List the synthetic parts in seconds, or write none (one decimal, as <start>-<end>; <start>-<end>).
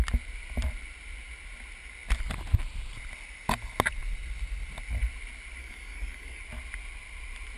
5.6-6.4